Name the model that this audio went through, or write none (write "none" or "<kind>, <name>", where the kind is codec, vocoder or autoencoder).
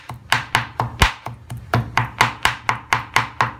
none